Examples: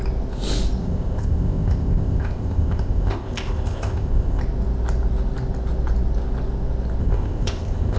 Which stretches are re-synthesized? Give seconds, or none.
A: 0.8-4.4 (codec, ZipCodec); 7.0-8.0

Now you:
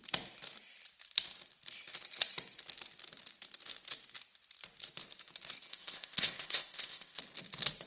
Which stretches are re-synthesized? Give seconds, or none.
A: 5.7-7.2 (codec, ZipCodec)

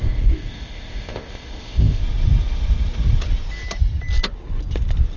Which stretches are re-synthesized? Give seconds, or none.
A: 0.0-2.0 (codec, ZipCodec)

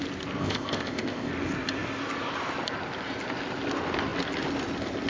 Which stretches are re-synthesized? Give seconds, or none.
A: 0.4-1.3 (codec, ZipCodec)

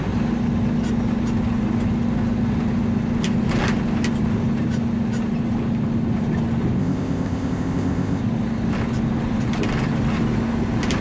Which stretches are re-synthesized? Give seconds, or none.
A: 6.8-8.2 (codec, ZipCodec)

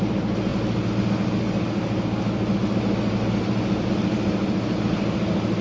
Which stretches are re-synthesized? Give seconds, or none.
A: none

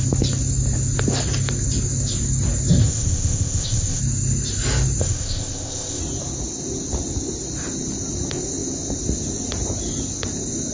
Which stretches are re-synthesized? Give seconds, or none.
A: 2.8-4.0 (codec, ZipCodec); 5.0-6.0